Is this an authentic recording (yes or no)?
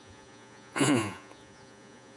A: no